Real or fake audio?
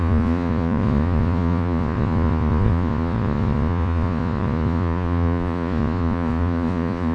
fake